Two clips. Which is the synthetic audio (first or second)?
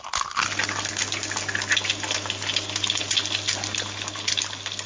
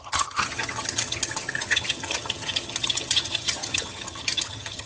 second